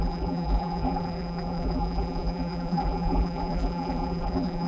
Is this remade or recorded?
remade